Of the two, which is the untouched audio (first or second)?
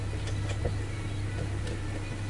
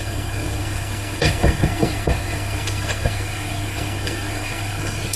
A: first